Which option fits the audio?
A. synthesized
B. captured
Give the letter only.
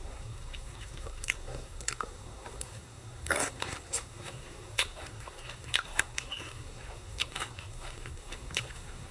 A